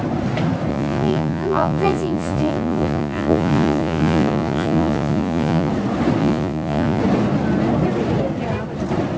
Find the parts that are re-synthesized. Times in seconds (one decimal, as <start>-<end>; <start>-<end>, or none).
0.7-5.7; 6.2-7.0